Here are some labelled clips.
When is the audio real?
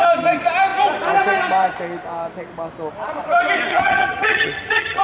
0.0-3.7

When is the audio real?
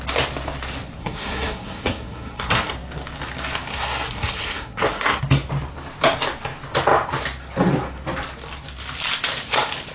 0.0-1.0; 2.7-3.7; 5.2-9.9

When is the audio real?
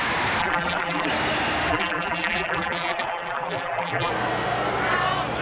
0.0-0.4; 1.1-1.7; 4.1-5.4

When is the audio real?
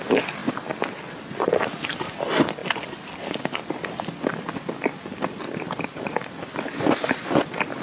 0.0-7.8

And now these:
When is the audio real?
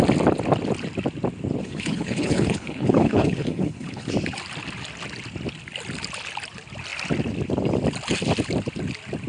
0.0-1.6; 4.1-9.3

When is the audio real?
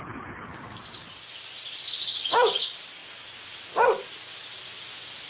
0.0-2.0; 2.6-5.3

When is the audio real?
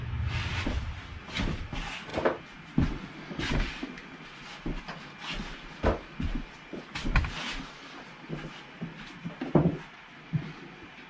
0.0-11.1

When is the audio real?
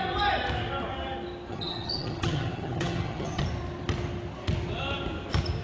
0.0-1.5; 3.4-5.6